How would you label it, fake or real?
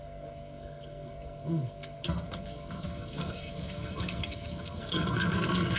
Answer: fake